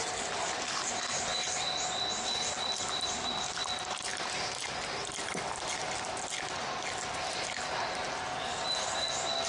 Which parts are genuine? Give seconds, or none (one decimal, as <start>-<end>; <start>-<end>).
0.0-9.5